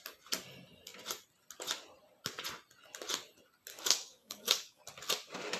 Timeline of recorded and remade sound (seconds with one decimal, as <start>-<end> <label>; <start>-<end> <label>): 0.0-3.7 recorded; 3.7-4.8 remade; 4.8-5.6 recorded